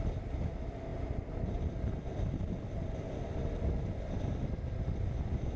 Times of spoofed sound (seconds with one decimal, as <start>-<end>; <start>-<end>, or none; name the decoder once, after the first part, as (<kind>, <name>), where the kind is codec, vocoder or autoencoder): none